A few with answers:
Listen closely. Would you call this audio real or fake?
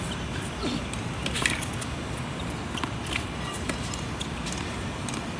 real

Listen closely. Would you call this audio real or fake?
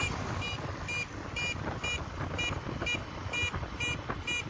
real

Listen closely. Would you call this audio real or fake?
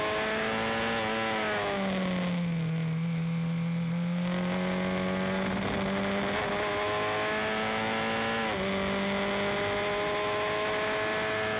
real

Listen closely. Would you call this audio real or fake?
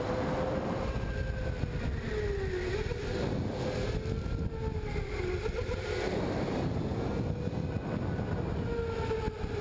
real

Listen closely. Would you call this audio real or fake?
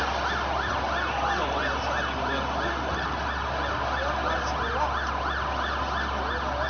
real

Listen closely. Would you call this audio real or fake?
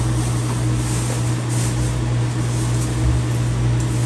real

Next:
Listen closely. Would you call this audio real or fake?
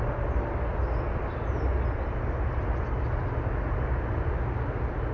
real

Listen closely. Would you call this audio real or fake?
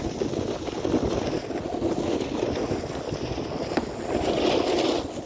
real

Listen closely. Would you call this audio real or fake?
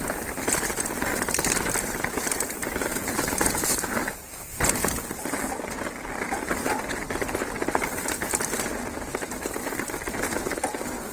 real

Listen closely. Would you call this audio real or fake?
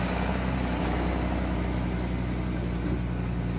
real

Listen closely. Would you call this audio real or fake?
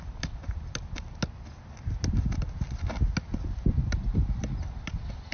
real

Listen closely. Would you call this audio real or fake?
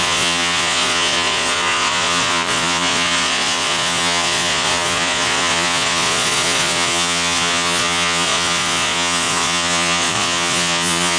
fake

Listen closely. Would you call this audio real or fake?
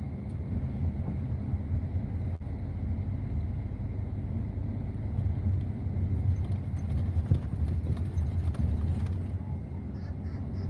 real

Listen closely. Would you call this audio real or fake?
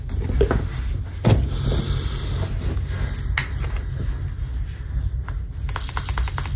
real